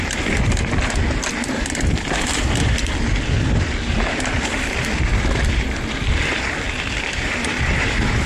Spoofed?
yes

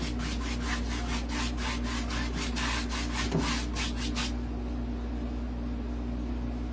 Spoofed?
no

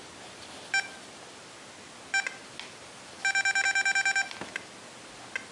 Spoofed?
no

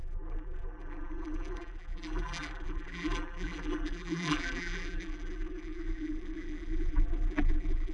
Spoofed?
yes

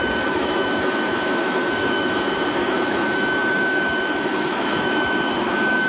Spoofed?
yes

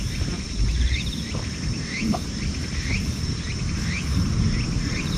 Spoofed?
yes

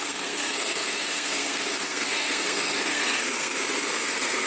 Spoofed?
yes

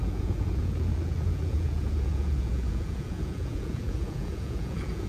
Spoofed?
yes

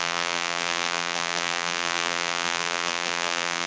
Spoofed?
yes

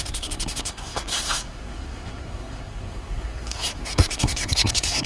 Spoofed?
yes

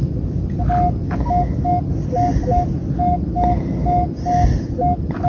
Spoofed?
no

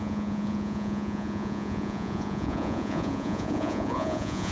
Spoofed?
yes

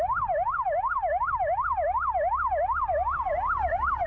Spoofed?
no